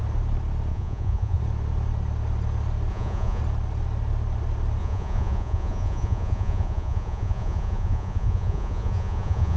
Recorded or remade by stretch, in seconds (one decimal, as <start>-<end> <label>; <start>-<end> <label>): 0.0-0.7 recorded; 0.7-1.4 remade; 1.4-2.9 recorded; 2.9-3.4 remade; 3.4-4.8 recorded; 4.8-9.6 remade